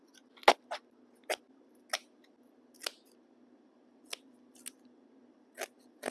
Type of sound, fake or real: real